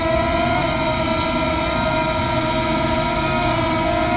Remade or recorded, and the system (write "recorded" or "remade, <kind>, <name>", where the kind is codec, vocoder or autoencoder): recorded